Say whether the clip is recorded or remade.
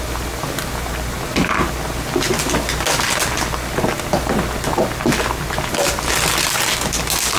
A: recorded